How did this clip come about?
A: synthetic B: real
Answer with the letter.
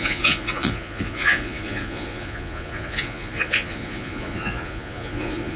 A